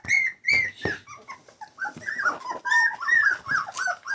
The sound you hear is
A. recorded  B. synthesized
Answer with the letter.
A